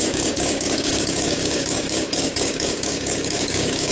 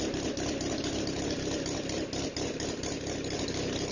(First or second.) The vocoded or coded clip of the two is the first